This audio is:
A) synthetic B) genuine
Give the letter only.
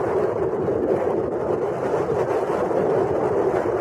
B